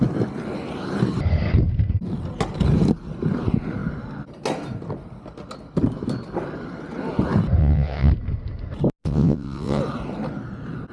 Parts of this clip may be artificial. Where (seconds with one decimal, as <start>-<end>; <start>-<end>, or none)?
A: 7.6-8.1; 9.0-9.8